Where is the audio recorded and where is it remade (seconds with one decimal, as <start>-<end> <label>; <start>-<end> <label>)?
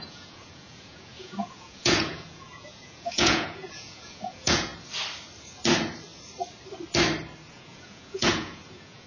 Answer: 0.0-4.7 remade; 4.7-7.5 recorded; 7.5-9.1 remade